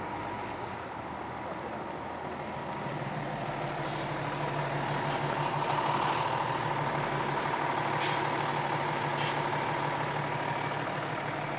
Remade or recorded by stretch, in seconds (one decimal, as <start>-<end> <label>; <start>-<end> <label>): 0.0-11.6 recorded